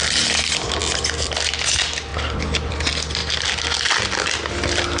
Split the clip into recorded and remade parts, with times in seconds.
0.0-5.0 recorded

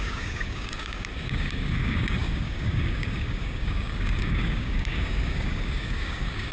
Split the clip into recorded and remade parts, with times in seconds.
0.0-6.5 remade

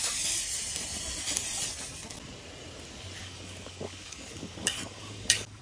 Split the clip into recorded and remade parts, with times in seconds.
0.0-3.2 recorded; 3.2-5.6 remade

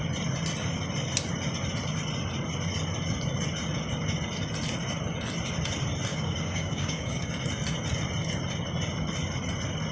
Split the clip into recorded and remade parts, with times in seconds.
0.0-6.1 recorded; 6.1-7.3 remade; 7.3-9.9 recorded

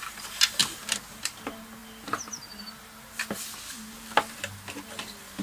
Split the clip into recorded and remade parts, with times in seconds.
0.0-5.4 recorded